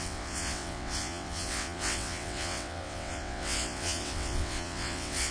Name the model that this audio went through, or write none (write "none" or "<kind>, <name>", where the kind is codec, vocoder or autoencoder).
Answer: vocoder, WaveNeXt